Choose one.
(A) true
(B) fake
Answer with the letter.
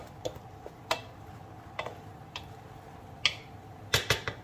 A